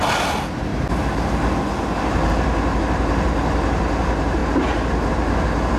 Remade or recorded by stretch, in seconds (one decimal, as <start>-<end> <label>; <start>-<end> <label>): 0.0-5.8 recorded